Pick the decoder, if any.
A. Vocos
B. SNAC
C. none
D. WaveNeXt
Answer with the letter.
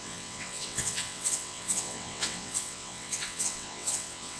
D